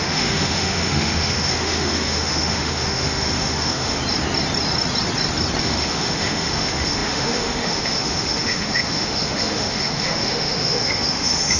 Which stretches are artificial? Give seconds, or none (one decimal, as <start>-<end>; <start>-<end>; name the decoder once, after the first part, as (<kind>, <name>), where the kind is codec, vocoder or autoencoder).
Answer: 0.0-4.0 (autoencoder, DAC-VAE); 5.6-11.6